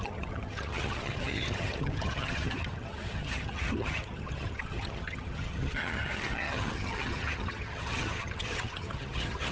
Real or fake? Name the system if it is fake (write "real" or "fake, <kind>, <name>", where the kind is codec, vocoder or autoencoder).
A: fake, vocoder, HiFi-GAN